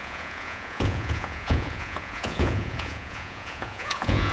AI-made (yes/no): yes